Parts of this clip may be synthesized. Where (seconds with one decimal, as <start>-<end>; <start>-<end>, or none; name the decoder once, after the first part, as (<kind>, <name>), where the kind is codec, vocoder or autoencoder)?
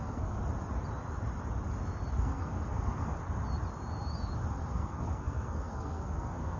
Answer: 0.0-0.4 (codec, SNAC); 2.2-3.2; 4.5-6.6